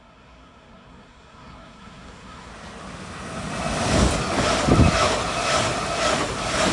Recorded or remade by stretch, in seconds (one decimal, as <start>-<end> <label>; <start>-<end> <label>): 0.0-2.5 remade; 2.5-6.7 recorded